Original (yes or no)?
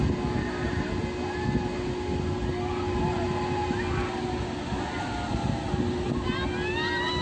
yes